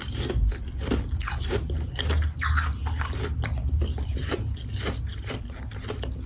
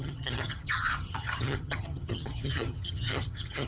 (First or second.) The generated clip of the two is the second